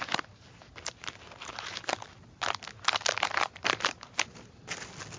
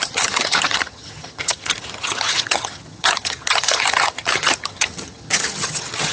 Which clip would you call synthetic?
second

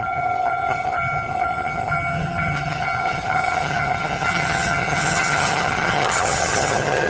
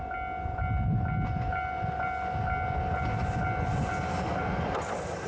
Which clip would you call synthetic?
first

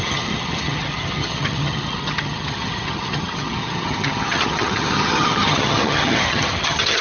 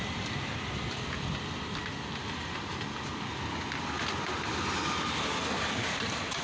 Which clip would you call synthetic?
first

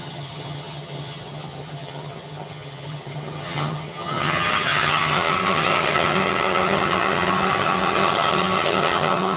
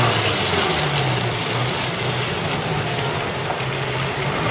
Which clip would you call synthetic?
first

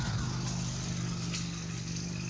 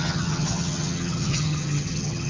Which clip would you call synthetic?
second